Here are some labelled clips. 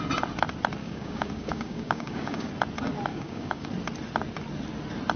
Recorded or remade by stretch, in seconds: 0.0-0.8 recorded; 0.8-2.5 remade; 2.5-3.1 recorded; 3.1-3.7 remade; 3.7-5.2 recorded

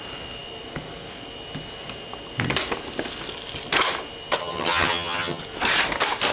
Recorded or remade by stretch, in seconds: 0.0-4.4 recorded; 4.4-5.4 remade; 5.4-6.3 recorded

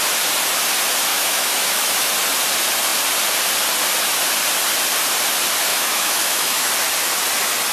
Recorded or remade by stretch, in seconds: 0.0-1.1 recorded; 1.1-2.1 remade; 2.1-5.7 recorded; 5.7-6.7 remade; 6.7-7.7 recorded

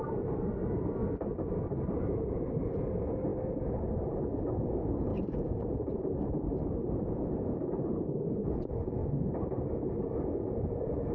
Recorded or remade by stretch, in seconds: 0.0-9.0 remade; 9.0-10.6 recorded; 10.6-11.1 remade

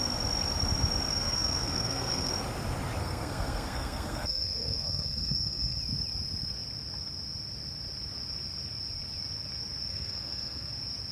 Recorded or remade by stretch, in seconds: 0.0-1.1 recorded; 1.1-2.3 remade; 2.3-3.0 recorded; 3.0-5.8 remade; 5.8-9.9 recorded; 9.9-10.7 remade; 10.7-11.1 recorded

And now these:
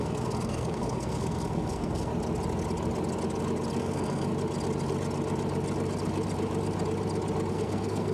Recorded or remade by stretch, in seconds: 0.0-2.1 remade; 2.1-3.8 recorded; 3.8-4.3 remade; 4.3-7.5 recorded; 7.5-8.1 remade